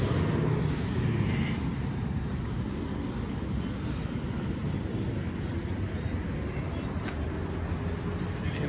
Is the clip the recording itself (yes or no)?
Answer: yes